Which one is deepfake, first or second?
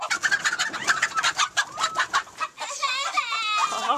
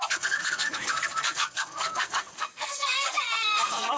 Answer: second